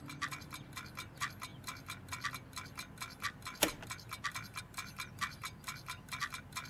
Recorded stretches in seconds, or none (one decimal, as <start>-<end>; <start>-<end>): 0.0-6.7